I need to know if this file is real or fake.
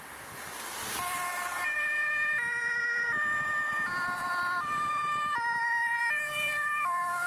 fake